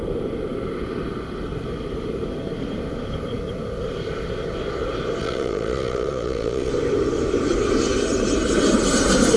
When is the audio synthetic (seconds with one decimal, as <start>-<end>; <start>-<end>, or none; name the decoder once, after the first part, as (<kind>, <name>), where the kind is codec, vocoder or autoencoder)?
5.2-6.7 (vocoder, Vocos)